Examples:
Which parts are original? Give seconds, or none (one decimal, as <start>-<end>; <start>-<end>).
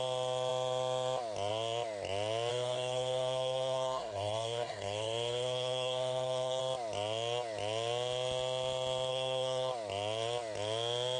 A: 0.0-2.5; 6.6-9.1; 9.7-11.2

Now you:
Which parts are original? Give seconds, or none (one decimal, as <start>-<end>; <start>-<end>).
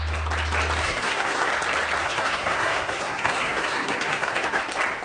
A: 0.0-0.8; 1.5-2.0; 4.6-5.0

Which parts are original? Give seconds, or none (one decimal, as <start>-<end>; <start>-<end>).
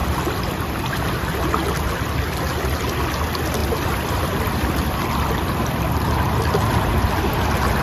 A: 1.1-3.6; 5.3-7.8